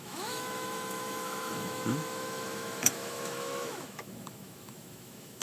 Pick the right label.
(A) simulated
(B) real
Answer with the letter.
A